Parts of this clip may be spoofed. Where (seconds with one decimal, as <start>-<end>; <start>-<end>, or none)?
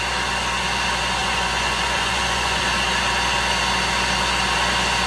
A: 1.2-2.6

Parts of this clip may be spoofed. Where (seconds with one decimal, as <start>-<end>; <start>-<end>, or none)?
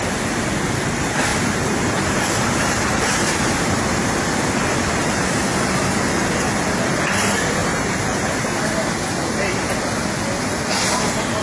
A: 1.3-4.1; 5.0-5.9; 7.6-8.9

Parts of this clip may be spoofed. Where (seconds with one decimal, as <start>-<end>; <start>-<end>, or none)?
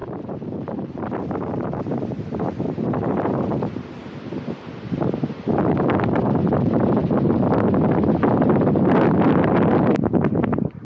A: 0.0-4.0; 4.7-7.0; 9.3-10.8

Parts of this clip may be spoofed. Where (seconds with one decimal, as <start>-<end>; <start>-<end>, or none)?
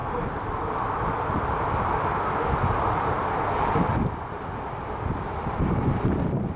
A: 3.0-3.9; 5.8-6.6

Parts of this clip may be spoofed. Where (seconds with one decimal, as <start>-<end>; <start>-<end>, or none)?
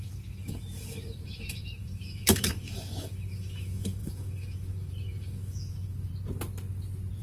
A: 0.0-6.1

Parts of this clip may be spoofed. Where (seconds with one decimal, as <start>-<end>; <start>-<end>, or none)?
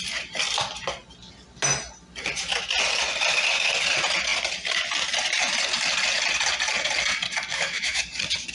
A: 7.5-8.0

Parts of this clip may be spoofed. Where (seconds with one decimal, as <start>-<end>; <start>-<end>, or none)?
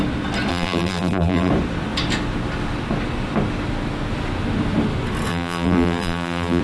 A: 0.5-1.5; 5.3-6.6